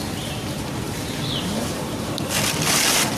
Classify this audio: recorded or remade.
recorded